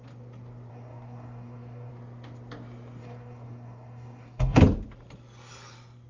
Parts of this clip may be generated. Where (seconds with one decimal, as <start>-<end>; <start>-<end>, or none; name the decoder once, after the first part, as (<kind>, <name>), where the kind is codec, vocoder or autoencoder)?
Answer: 0.7-1.9 (codec, DAC); 3.0-4.6

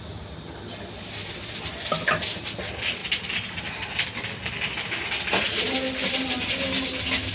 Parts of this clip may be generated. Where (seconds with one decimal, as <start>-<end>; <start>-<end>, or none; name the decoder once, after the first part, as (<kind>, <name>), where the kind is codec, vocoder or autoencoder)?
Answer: none

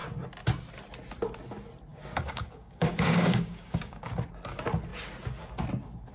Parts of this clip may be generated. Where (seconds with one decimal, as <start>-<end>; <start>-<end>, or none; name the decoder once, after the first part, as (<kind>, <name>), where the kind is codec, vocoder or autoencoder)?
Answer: 1.9-4.1 (codec, DAC)

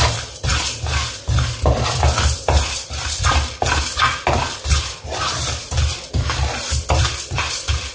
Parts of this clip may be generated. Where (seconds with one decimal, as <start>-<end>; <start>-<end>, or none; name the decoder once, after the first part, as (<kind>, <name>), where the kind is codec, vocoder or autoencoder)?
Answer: none

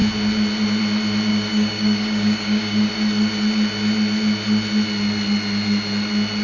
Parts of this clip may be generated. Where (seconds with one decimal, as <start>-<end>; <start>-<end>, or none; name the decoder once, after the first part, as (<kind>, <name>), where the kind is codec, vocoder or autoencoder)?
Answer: 1.3-2.9 (codec, DAC)